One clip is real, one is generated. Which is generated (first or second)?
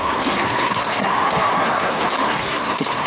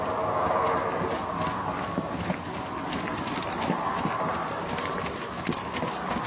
first